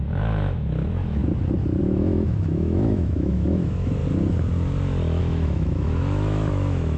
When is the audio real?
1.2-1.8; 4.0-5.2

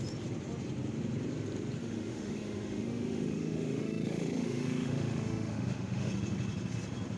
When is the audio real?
0.0-1.8; 6.1-7.2

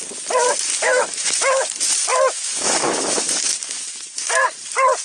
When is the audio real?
0.0-0.7; 1.7-2.1; 4.4-5.0

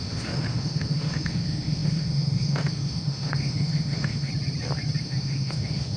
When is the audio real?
4.3-5.0

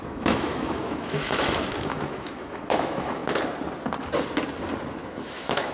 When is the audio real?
3.2-4.9

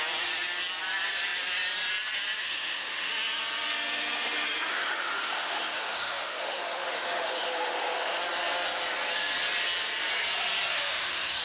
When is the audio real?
0.0-2.4; 3.1-4.7; 8.2-10.7